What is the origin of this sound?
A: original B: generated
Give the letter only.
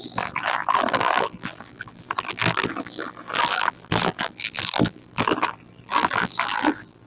B